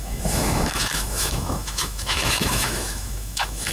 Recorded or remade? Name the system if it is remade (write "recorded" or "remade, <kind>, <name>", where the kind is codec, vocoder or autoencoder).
remade, autoencoder, DAC-VAE